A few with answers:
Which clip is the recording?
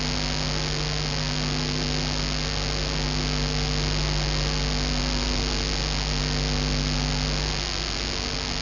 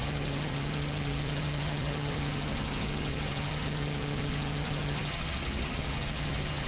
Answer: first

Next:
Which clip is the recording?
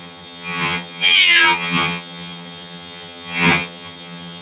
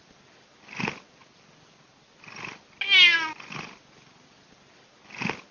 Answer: second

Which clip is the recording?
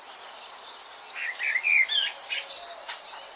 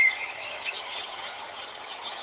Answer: first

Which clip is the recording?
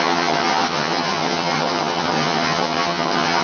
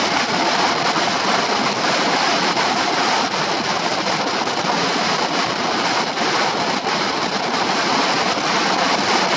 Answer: second